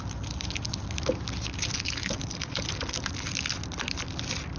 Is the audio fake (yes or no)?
no